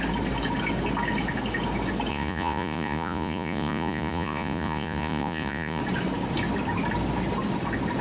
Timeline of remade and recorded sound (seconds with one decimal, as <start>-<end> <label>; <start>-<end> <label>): 0.0-2.1 recorded; 2.1-5.8 remade; 5.8-8.0 recorded